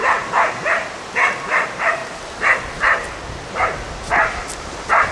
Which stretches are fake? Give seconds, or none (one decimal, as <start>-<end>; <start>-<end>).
1.3-2.0